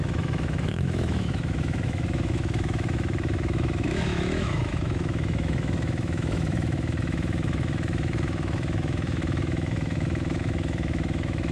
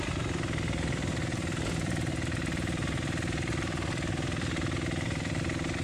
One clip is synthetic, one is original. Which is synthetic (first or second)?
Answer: first